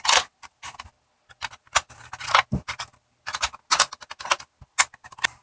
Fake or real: real